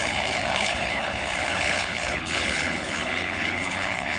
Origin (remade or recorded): remade